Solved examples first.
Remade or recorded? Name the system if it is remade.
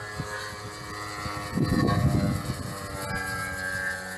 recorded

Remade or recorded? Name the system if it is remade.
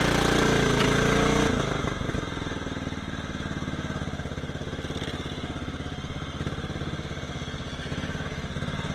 recorded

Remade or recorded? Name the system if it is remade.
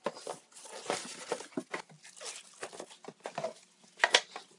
recorded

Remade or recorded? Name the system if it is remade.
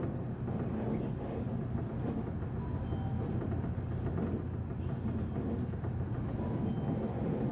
recorded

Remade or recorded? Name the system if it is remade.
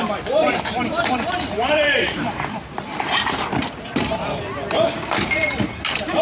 remade, vocoder, BigVGAN v2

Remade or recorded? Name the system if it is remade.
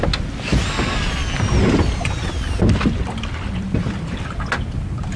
recorded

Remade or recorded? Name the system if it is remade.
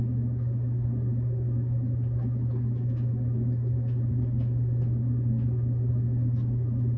recorded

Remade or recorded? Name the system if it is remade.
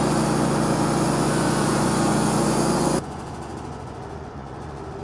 remade, vocoder, Vocos